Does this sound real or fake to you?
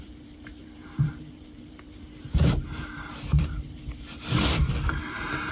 fake